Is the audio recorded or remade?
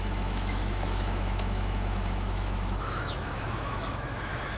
remade